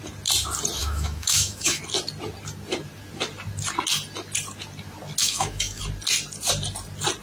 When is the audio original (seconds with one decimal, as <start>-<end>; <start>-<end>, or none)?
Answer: 0.0-0.8; 1.8-5.2; 5.8-7.2